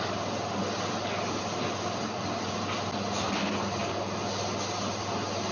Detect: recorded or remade recorded